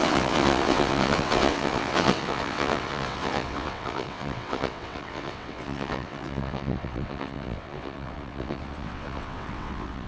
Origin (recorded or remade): remade